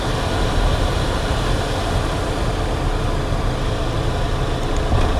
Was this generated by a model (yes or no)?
no